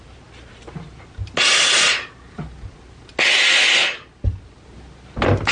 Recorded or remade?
recorded